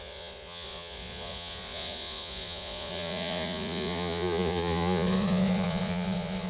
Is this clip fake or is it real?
fake